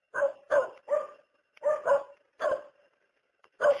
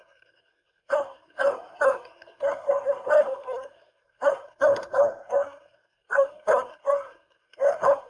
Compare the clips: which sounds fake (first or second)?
second